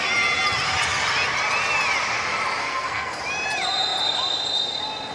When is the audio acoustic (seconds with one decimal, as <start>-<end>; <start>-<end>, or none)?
0.0-2.6; 3.2-5.1

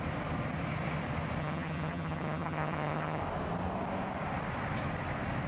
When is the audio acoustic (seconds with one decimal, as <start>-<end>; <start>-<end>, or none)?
0.0-1.4; 3.2-5.5